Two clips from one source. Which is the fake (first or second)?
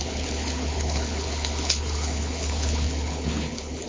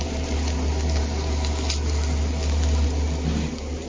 first